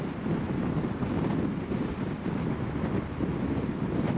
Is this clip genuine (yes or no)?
yes